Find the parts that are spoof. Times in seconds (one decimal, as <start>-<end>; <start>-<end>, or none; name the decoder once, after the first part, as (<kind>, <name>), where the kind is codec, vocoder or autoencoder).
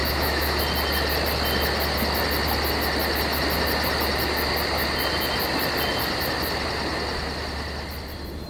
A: 0.0-0.6 (autoencoder, DAC-VAE)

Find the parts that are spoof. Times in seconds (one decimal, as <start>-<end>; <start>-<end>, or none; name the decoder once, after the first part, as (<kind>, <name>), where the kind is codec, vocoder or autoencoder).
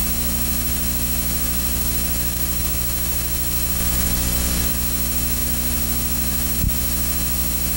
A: 3.8-4.7 (vocoder, BigVGAN v2)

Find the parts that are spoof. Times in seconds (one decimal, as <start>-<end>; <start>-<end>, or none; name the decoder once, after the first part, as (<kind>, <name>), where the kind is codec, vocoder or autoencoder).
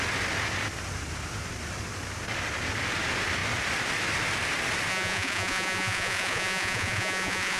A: 4.9-7.6 (vocoder, Vocos)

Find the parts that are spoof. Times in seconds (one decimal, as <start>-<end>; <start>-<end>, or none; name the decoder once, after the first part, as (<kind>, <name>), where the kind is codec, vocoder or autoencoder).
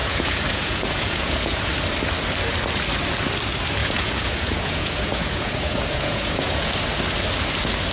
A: 0.0-1.6 (vocoder, Vocos); 3.8-6.7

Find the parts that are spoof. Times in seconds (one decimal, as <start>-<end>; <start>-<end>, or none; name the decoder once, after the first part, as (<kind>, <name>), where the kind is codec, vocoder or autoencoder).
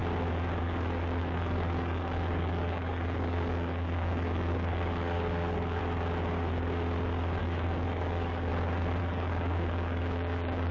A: 0.6-5.8 (codec, DAC); 7.4-8.5; 9.0-10.7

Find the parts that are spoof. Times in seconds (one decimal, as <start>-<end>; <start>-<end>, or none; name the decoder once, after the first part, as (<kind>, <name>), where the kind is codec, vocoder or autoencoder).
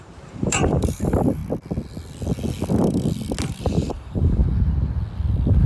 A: 0.0-1.4 (vocoder, BigVGAN v2); 3.6-4.4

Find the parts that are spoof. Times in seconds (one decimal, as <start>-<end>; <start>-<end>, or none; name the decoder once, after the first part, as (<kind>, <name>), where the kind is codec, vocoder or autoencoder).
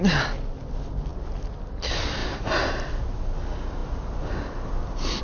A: 2.2-2.7 (vocoder, BigVGAN v2)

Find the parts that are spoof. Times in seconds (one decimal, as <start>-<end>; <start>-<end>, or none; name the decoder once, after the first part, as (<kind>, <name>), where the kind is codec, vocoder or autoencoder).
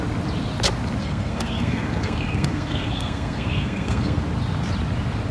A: 1.0-4.2 (codec, SNAC)